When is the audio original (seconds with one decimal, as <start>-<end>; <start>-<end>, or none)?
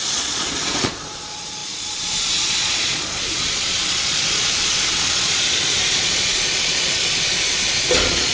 none